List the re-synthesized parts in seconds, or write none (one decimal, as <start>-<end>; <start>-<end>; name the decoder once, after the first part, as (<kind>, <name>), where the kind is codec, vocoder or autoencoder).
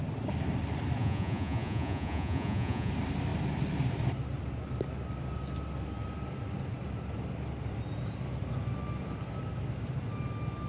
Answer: 1.0-2.9 (vocoder, Vocos)